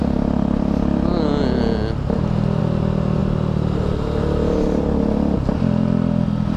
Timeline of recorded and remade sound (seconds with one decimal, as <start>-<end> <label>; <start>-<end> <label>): 0.0-6.6 recorded